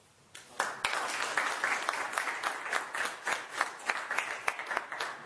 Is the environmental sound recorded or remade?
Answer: recorded